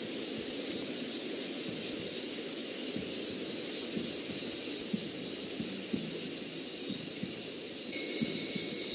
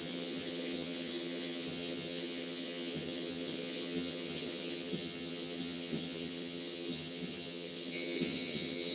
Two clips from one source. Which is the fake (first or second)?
second